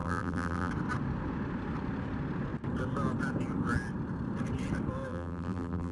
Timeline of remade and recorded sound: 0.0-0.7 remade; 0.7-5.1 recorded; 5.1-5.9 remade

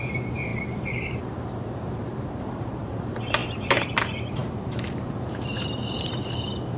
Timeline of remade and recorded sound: 0.0-6.8 remade

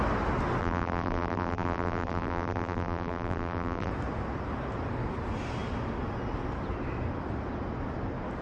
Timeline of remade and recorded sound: 0.0-0.6 recorded; 0.6-3.9 remade; 3.9-8.4 recorded